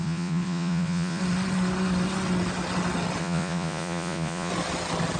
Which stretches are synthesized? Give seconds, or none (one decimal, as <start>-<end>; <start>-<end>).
0.0-1.2; 3.2-4.5